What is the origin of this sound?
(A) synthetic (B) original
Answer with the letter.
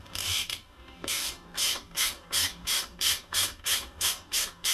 A